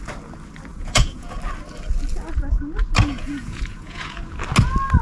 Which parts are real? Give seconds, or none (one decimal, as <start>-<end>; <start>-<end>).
0.0-0.7; 1.4-3.1; 4.2-5.0